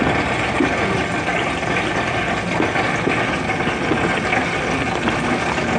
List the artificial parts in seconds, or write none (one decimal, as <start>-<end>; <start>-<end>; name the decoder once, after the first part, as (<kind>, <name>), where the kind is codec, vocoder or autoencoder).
none